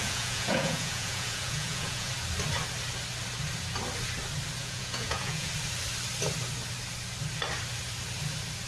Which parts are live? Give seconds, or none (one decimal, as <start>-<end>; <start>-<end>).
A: 2.1-4.6; 5.5-8.7